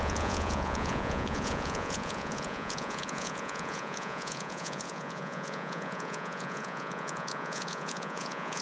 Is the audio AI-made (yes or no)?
yes